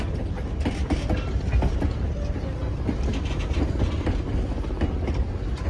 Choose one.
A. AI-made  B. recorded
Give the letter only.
B